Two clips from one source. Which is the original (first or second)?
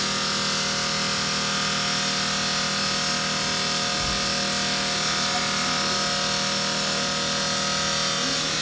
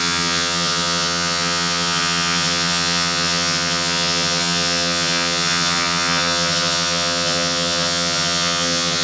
first